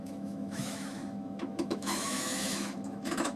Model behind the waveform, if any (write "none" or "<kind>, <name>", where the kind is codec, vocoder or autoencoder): autoencoder, DAC-VAE